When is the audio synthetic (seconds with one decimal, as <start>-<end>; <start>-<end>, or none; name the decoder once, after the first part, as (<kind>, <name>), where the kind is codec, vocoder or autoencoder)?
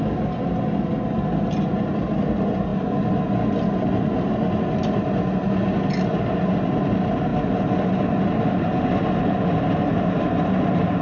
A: none